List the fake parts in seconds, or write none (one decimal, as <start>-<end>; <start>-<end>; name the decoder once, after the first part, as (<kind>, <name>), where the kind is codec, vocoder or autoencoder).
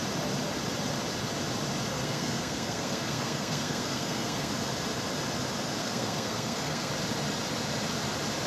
1.9-4.5 (codec, SNAC); 5.8-6.9